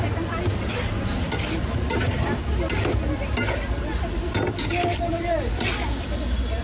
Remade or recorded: recorded